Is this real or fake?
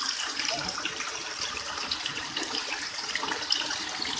fake